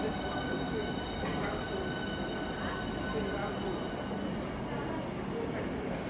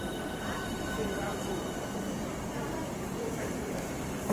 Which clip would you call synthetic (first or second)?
second